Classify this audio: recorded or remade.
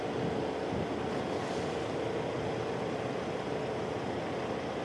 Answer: recorded